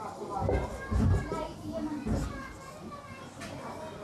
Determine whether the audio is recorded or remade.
recorded